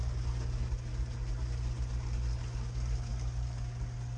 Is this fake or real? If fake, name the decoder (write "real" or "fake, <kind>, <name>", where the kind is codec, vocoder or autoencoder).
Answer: real